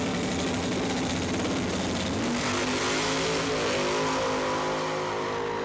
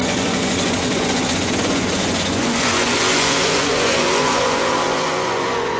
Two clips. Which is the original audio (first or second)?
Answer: first